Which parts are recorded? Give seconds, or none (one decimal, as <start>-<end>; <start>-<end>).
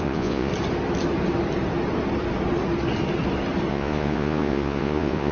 0.5-3.7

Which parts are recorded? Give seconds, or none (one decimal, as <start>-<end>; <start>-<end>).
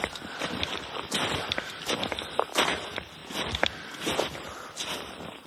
3.2-4.7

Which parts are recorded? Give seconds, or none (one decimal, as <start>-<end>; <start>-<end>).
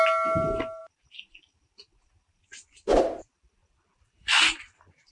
0.0-3.6